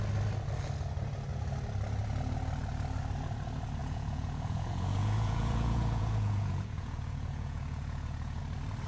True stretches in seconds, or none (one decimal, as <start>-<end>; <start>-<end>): 0.0-3.8; 8.4-8.9